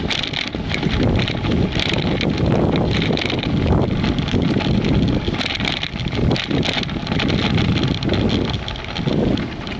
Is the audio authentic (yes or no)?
yes